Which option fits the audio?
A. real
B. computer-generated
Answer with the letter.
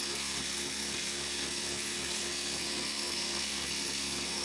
B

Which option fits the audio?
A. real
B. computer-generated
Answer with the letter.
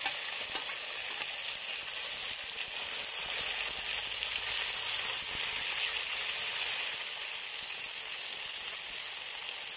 A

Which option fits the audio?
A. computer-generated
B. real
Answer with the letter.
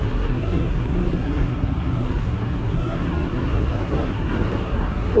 A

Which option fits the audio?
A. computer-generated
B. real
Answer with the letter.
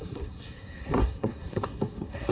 A